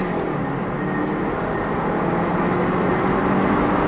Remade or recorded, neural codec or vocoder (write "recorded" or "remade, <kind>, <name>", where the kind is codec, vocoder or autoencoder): recorded